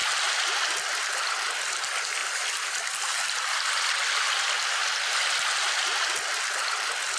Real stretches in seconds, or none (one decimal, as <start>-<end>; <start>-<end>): 0.0-4.8; 5.4-7.2